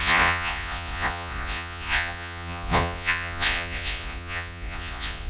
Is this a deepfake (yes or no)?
yes